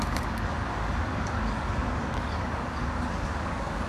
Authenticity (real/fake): fake